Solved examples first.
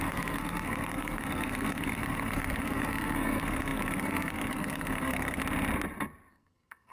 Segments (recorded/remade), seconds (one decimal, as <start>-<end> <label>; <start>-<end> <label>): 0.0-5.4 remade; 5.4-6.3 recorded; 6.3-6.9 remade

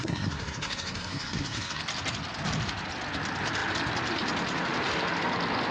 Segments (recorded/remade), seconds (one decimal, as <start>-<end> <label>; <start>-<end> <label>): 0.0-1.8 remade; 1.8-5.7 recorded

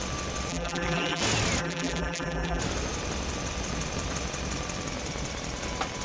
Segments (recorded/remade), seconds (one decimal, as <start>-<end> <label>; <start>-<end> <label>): 0.0-0.5 recorded; 0.5-1.2 remade; 1.2-1.6 recorded; 1.6-2.6 remade; 2.6-6.0 recorded